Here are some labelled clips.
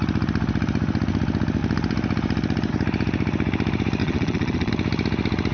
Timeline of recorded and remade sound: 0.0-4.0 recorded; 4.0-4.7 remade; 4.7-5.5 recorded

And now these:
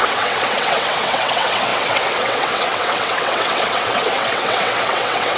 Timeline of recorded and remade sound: 0.0-5.4 remade

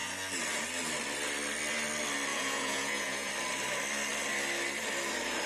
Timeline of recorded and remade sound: 0.0-2.3 recorded; 2.3-3.3 remade; 3.3-5.5 recorded

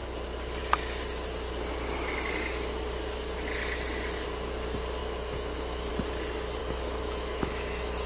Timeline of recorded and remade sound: 0.0-5.0 recorded; 5.0-5.9 remade; 5.9-6.6 recorded; 6.6-8.1 remade